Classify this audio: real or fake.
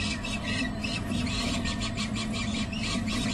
real